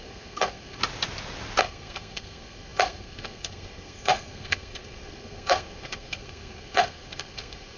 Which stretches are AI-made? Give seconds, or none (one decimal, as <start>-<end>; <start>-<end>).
0.0-0.8; 1.6-7.8

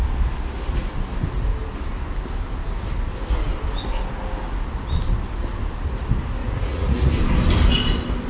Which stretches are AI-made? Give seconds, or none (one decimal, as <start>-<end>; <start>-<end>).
6.4-7.1

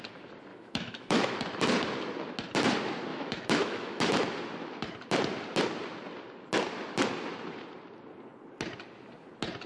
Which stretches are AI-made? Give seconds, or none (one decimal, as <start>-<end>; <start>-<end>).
0.5-1.3; 3.1-4.0

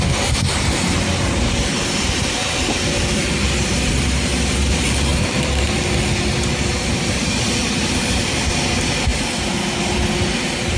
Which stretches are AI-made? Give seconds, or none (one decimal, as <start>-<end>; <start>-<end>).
none

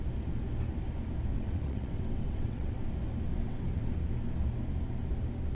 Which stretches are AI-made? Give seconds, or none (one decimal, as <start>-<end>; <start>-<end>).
1.3-2.8; 3.3-3.9

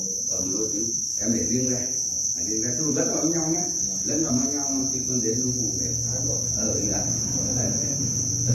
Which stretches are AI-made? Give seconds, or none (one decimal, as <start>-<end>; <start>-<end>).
0.0-1.1; 4.3-4.8

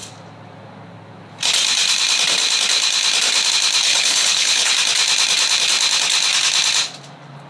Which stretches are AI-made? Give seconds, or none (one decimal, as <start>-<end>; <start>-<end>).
3.9-4.7

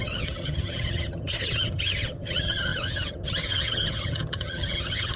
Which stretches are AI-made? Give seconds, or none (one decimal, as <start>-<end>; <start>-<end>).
0.0-5.2